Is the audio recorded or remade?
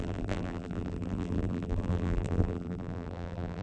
remade